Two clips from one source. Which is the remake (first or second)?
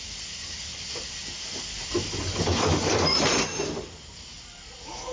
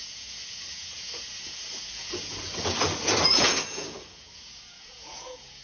second